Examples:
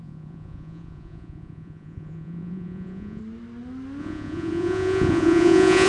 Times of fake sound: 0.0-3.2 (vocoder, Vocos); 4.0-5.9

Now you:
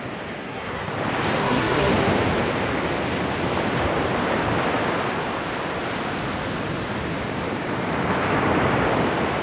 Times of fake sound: 0.4-0.9 (codec, SNAC); 1.4-1.9

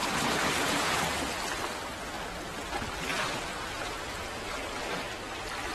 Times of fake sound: 0.0-1.0 (vocoder, Vocos); 3.1-4.5